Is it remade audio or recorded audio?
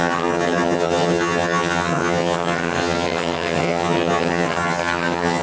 remade